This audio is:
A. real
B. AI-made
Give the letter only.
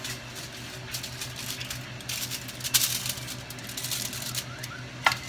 A